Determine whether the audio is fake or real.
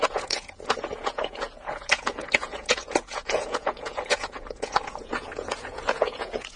fake